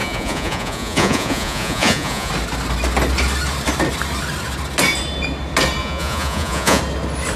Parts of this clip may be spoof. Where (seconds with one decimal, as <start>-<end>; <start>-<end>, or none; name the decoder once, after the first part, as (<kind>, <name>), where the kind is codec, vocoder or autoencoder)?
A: 0.0-2.3 (vocoder, Vocos); 5.8-6.8

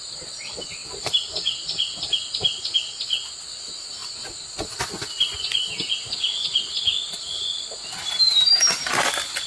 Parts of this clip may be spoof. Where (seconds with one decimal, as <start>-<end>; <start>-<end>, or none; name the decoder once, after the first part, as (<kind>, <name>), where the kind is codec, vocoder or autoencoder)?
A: 0.8-2.6 (vocoder, BigVGAN v2)